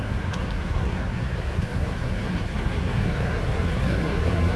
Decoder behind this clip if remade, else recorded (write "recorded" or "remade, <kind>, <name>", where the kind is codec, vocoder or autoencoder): remade, codec, SNAC